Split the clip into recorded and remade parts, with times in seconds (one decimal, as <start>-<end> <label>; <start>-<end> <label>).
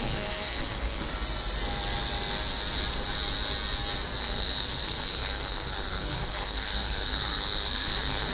0.0-1.1 remade; 1.1-4.2 recorded; 4.2-8.3 remade